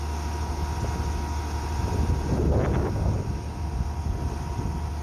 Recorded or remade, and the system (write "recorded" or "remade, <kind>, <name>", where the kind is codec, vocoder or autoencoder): recorded